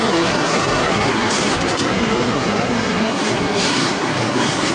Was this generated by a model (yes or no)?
yes